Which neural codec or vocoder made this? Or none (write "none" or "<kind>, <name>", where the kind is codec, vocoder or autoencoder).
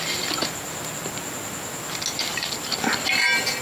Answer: none